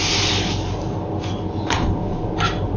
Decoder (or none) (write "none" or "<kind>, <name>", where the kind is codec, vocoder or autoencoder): none